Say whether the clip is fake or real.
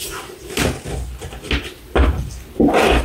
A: real